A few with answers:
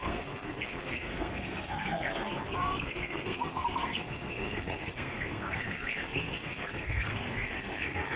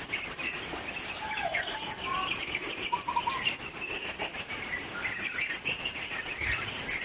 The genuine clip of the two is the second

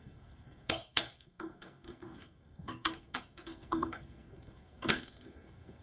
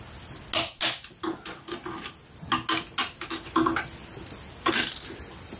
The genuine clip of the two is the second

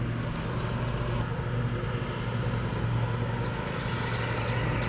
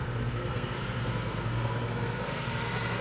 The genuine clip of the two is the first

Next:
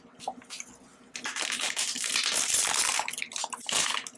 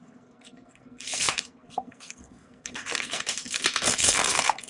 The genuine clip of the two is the first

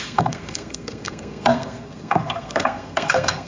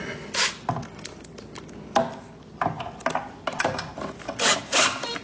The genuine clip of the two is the second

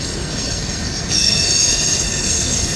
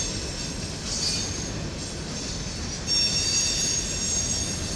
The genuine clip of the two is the second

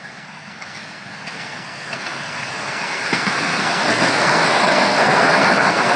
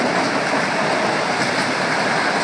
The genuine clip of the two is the second